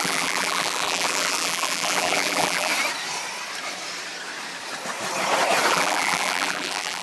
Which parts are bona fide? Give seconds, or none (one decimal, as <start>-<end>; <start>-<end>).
2.7-5.7